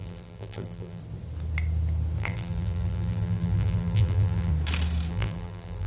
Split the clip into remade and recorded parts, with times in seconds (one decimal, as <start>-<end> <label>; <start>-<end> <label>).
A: 0.0-1.0 remade; 1.0-2.2 recorded; 2.2-4.5 remade; 4.5-5.1 recorded; 5.1-5.9 remade